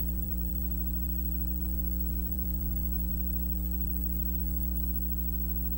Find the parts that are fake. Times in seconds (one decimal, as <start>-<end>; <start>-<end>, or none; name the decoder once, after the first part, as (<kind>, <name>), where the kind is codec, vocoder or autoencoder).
0.0-0.5 (vocoder, BigVGAN v2); 1.6-3.1; 4.4-4.9